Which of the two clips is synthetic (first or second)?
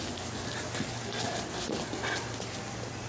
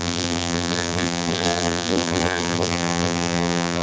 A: second